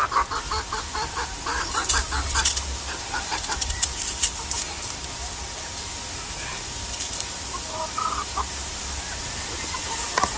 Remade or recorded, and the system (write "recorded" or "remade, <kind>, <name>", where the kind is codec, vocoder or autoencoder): recorded